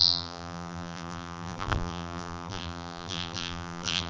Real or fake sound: fake